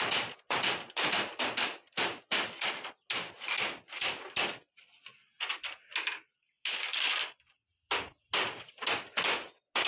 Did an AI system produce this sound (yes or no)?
no